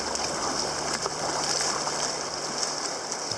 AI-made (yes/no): yes